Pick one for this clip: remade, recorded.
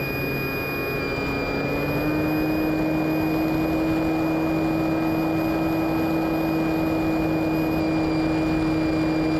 recorded